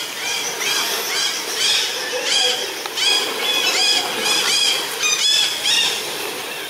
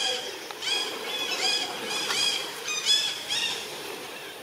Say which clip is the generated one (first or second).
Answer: second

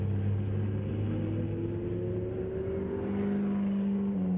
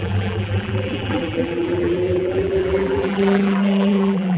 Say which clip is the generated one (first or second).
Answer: second